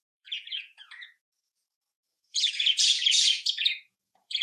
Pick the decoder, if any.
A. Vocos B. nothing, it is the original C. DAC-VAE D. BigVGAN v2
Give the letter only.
A